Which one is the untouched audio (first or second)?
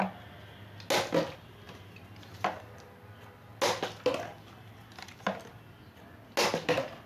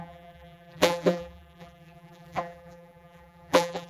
first